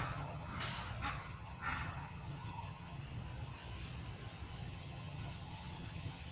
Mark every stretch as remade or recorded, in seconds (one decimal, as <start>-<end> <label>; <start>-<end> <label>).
0.0-0.5 remade; 0.5-1.1 recorded; 1.1-3.0 remade; 3.0-4.7 recorded; 4.7-6.3 remade